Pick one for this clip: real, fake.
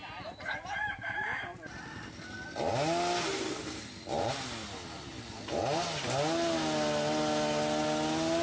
real